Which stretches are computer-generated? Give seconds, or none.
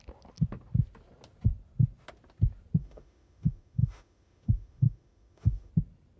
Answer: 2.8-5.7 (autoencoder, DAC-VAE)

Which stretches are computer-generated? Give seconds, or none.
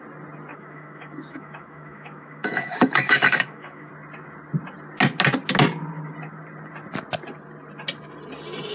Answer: 0.5-3.9 (autoencoder, DAC-VAE)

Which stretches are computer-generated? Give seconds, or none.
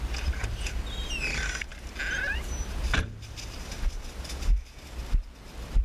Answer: none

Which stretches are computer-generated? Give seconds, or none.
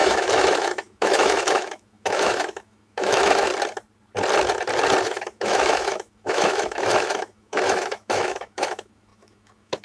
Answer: 0.0-3.5 (autoencoder, DAC-VAE); 5.0-9.8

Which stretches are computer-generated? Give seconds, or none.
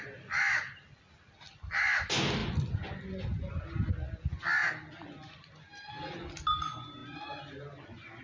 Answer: none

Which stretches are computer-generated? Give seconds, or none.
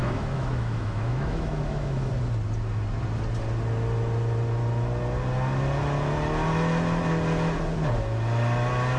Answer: 0.0-2.1 (autoencoder, DAC-VAE)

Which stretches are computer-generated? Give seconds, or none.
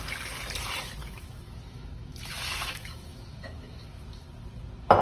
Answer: 1.0-4.0 (autoencoder, DAC-VAE)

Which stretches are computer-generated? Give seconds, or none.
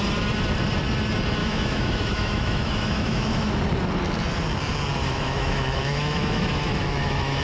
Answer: 1.4-3.6 (autoencoder, DAC-VAE); 5.0-7.4